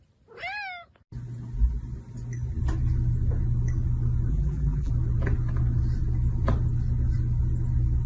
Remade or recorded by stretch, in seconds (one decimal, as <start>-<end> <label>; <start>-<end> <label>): 0.0-4.3 recorded; 4.3-4.9 remade; 4.9-8.1 recorded